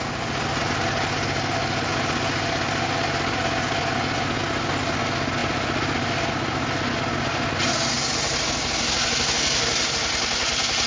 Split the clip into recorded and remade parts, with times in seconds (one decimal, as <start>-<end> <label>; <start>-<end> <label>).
0.0-10.9 recorded